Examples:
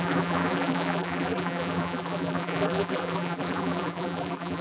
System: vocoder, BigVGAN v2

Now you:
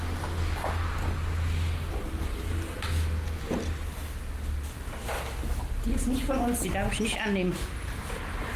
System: none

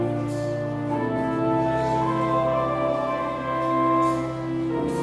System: none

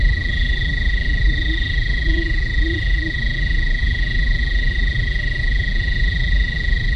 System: vocoder, BigVGAN v2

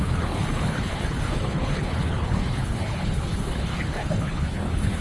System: codec, HILCodec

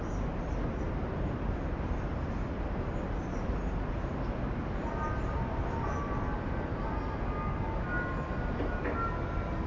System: none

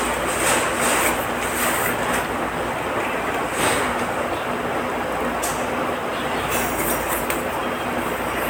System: none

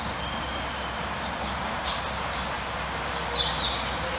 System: none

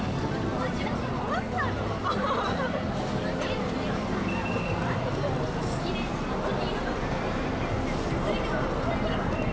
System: none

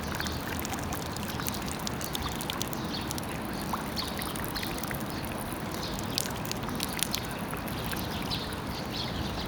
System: none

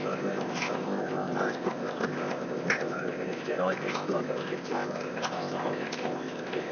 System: codec, ZipCodec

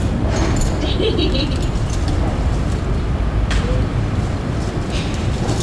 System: vocoder, BigVGAN v2